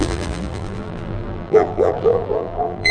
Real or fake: fake